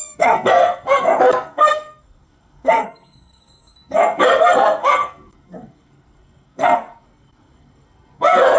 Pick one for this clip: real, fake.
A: fake